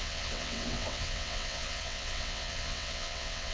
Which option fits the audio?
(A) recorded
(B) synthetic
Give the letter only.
B